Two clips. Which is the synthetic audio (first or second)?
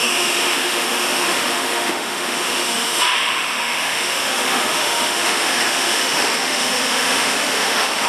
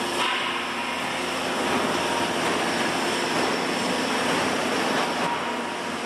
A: first